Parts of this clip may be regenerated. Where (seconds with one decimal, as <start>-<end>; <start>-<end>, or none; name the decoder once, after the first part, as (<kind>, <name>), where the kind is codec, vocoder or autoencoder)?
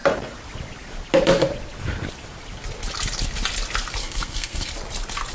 4.0-4.7 (codec, SNAC)